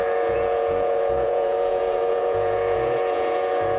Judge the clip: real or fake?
fake